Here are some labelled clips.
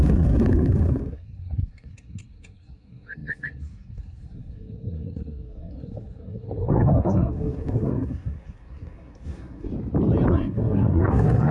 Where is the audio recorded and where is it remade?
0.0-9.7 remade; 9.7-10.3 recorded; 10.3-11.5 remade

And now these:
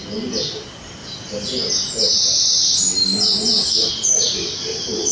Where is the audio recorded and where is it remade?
0.0-5.1 recorded

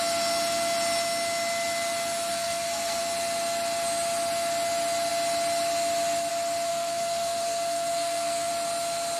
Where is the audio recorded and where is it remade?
0.0-2.3 recorded; 2.3-3.0 remade; 3.0-6.7 recorded; 6.7-8.5 remade; 8.5-9.2 recorded

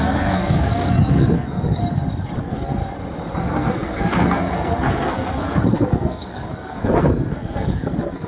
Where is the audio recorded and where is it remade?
0.0-1.8 remade; 1.8-2.4 recorded; 2.4-2.8 remade; 2.8-3.4 recorded; 3.4-8.3 remade

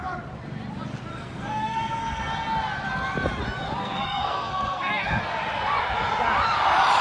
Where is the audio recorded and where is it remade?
0.0-1.1 recorded; 1.1-2.2 remade; 2.2-3.8 recorded; 3.8-5.2 remade; 5.2-7.0 recorded

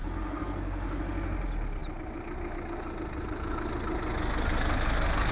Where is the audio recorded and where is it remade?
0.0-1.0 remade; 1.0-5.3 recorded

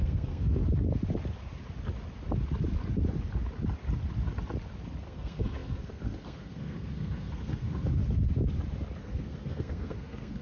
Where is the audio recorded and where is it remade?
0.0-0.6 remade; 0.6-5.0 recorded; 5.0-8.0 remade; 8.0-9.0 recorded; 9.0-10.4 remade